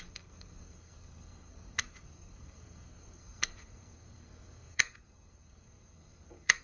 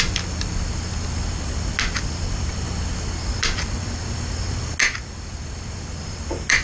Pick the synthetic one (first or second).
first